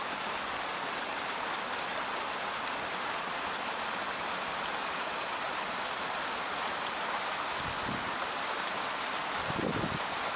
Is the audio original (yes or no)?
yes